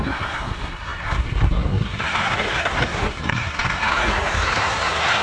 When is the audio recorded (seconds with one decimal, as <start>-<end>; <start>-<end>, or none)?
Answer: none

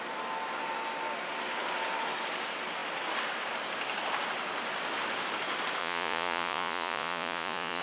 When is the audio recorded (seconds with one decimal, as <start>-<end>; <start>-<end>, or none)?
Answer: 0.0-5.8

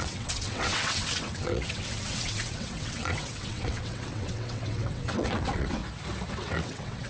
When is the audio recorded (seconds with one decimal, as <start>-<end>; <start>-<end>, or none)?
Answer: 5.8-6.3

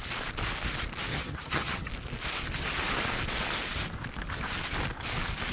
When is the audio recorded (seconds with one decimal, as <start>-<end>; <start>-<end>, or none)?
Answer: 0.0-1.1; 1.9-5.5

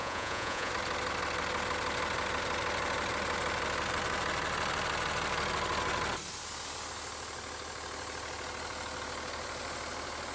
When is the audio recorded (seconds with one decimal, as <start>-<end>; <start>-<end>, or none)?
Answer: 0.7-10.3

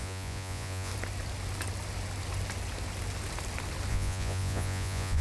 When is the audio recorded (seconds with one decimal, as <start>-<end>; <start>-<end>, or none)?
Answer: 0.9-3.9

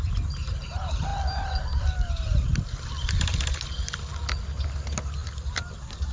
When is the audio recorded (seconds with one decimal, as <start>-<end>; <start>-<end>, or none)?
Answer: 0.0-6.1